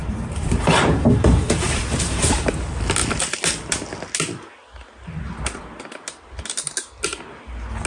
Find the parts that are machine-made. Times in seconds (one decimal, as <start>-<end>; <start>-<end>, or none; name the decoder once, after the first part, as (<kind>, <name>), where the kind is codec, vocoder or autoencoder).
0.0-2.3 (vocoder, BigVGAN v2)